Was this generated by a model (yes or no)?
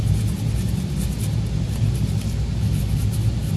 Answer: no